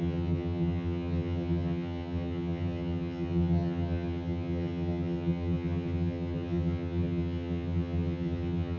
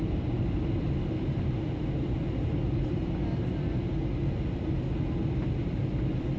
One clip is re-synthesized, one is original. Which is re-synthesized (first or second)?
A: first